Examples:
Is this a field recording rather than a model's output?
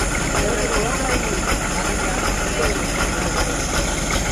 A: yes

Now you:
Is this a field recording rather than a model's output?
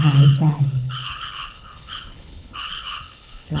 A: no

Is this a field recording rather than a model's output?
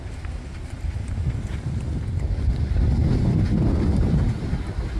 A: yes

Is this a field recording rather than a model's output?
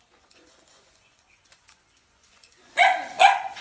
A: no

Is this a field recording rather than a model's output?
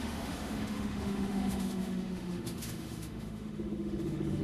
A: no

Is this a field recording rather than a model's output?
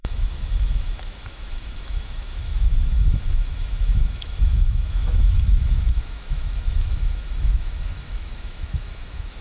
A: no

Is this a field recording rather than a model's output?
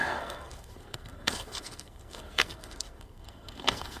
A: no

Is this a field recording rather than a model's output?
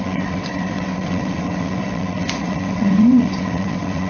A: no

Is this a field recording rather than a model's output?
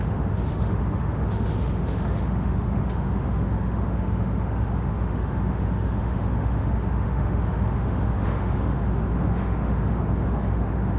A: no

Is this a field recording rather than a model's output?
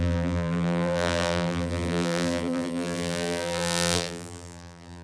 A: no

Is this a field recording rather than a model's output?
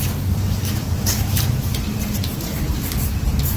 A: no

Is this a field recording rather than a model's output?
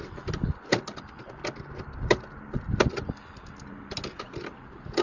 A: yes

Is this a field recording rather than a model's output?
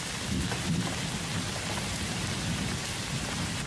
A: yes